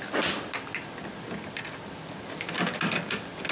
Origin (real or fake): real